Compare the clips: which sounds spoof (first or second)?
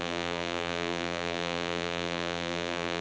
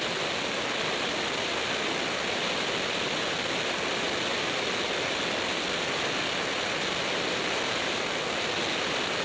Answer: first